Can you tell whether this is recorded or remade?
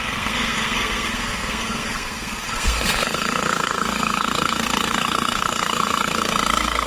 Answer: remade